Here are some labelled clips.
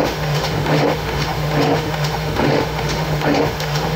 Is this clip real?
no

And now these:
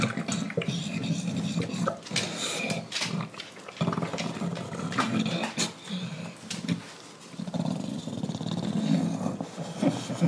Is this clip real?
yes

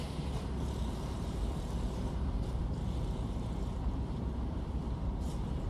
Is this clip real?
no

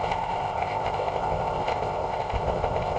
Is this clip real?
no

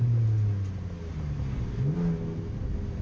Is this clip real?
yes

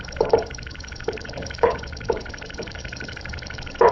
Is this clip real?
no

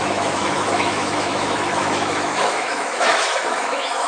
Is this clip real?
no